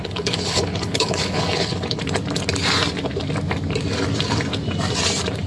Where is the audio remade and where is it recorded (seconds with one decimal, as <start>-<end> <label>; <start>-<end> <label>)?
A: 0.0-2.0 remade; 2.0-5.5 recorded

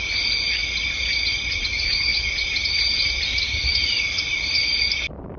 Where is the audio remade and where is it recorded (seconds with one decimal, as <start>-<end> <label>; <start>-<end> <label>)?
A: 0.0-0.6 remade; 0.6-1.5 recorded; 1.5-5.4 remade

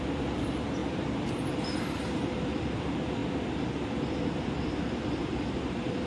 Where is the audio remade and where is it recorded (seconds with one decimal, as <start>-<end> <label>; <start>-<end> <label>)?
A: 0.0-0.8 remade; 0.8-1.5 recorded; 1.5-3.2 remade; 3.2-3.9 recorded; 3.9-6.1 remade

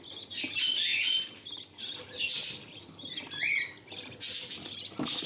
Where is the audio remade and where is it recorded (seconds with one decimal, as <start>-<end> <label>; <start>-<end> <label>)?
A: 0.0-5.3 recorded

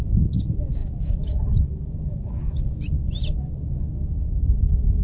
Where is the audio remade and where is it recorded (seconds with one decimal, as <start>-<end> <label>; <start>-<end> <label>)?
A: 0.0-5.0 recorded

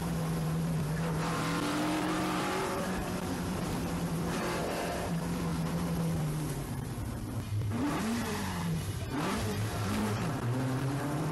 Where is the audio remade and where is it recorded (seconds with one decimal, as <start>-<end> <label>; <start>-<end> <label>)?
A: 0.0-11.3 remade